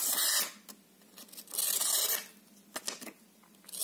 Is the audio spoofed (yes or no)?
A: no